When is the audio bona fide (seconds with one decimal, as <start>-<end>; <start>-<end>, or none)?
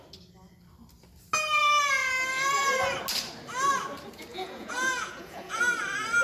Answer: 0.0-4.3; 5.6-6.2